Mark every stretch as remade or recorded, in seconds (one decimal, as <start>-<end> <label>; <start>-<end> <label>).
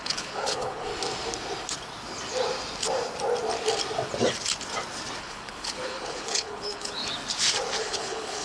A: 0.0-0.9 remade; 0.9-5.2 recorded; 5.2-7.0 remade; 7.0-7.8 recorded; 7.8-8.4 remade